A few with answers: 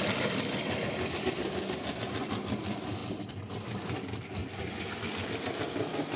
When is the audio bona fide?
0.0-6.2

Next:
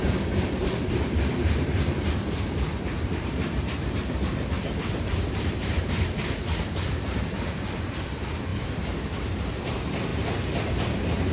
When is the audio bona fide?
8.5-9.4